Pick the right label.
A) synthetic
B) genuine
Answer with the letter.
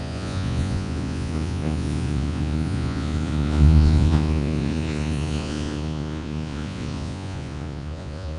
A